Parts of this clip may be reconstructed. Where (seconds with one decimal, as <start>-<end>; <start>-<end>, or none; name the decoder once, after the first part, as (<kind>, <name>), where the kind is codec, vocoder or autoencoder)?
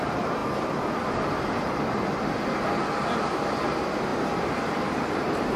4.1-5.6 (vocoder, BigVGAN v2)